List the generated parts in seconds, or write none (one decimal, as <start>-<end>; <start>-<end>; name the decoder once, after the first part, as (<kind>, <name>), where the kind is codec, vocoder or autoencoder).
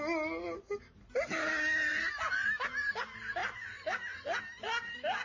none